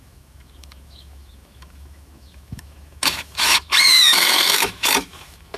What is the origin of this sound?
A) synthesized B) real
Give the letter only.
A